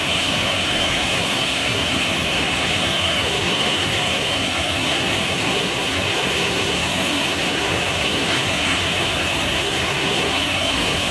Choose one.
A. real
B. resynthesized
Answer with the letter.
B